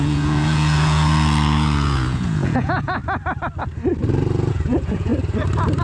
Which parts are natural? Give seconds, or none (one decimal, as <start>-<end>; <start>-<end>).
3.0-4.5; 5.1-5.8